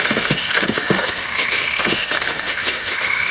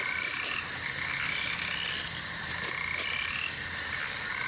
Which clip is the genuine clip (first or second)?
second